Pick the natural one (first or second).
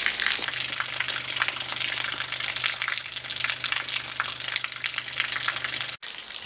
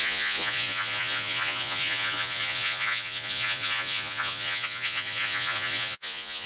first